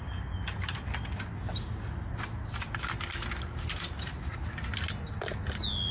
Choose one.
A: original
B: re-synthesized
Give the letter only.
A